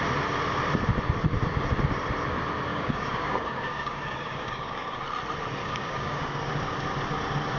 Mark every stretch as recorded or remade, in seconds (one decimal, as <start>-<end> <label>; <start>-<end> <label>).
0.0-2.7 recorded; 2.7-5.0 remade; 5.0-5.6 recorded; 5.6-6.5 remade; 6.5-7.6 recorded